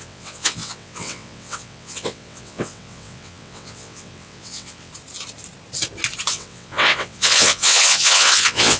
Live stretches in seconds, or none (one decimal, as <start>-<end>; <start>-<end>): 4.9-6.3